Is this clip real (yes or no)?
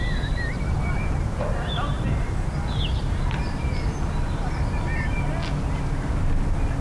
yes